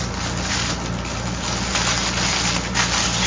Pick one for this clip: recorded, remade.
recorded